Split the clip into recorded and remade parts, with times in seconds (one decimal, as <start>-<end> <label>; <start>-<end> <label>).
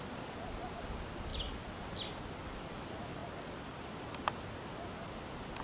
0.0-5.6 recorded